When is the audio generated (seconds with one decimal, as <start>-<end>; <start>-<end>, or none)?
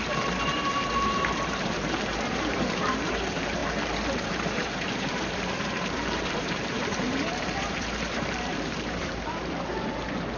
0.0-10.4